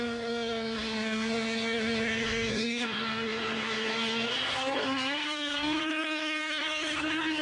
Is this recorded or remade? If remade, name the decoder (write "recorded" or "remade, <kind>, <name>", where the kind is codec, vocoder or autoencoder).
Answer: remade, codec, SNAC